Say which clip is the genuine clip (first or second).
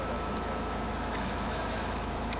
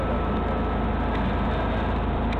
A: second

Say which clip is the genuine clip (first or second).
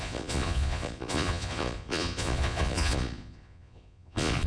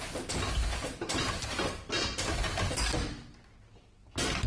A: second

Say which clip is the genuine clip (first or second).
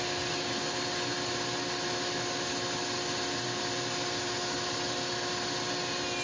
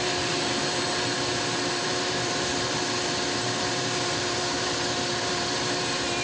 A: first